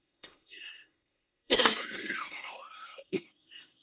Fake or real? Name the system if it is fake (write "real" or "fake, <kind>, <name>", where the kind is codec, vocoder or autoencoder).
fake, codec, SNAC